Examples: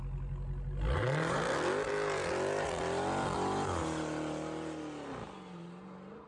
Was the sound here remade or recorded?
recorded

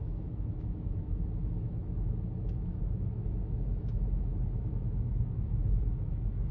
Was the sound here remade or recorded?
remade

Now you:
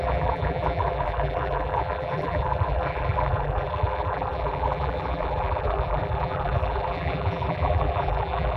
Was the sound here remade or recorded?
remade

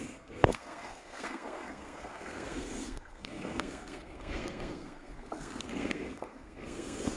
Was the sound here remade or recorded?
remade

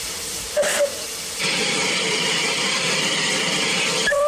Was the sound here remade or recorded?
remade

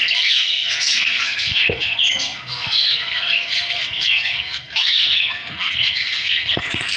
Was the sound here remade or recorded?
remade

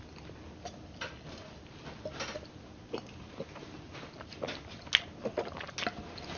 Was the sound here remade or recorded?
recorded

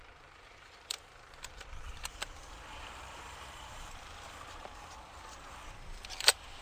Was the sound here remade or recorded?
remade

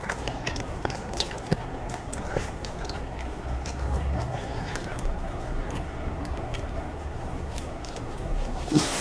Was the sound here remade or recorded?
remade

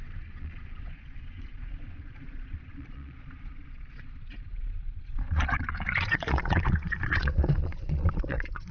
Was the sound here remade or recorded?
remade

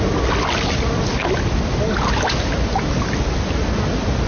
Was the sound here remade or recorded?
recorded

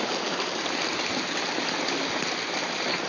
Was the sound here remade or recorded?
recorded